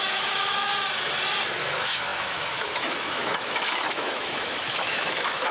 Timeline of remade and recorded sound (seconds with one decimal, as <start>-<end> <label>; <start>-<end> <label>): 0.0-0.7 remade; 0.7-1.6 recorded; 1.6-5.5 remade

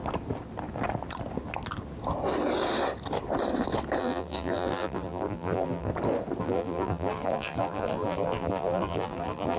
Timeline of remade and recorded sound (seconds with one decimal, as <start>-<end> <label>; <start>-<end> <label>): 0.0-4.0 recorded; 4.0-5.9 remade; 5.9-6.4 recorded; 6.4-9.6 remade

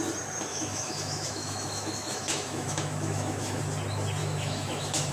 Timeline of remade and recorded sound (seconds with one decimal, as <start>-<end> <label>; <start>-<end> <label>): 0.0-0.5 recorded; 0.5-3.6 remade; 3.6-4.2 recorded; 4.2-5.1 remade

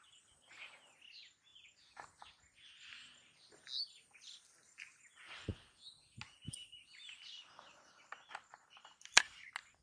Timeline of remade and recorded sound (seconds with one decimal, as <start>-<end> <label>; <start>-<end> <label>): 0.0-9.8 recorded

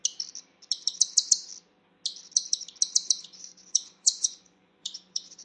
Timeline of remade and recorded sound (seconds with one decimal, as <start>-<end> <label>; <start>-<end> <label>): 0.0-3.2 recorded; 3.2-5.4 remade